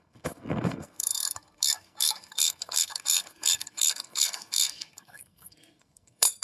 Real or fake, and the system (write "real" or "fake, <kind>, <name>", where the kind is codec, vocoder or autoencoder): fake, codec, SNAC